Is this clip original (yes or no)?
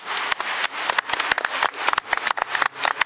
yes